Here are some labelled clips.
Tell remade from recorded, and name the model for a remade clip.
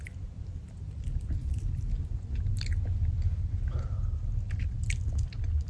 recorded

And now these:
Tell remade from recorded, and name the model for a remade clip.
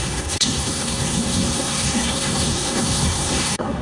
remade, codec, SNAC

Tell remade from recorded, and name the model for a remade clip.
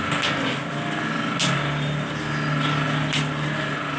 recorded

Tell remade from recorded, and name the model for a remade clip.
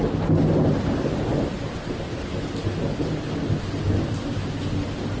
recorded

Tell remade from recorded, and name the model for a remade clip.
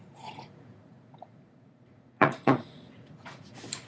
remade, vocoder, Vocos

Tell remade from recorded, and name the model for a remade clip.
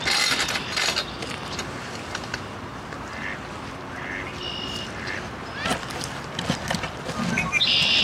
recorded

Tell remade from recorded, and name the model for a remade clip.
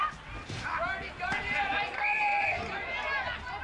recorded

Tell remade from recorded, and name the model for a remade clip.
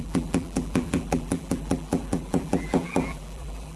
remade, vocoder, BigVGAN v2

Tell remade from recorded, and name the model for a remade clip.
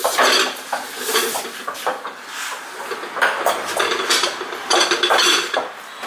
recorded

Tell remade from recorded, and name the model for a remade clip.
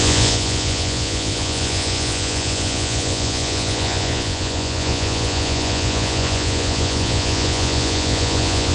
remade, vocoder, Vocos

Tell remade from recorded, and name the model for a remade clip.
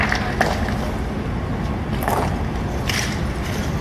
recorded